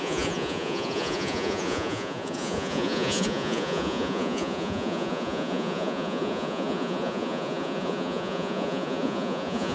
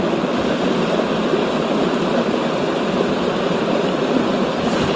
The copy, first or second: first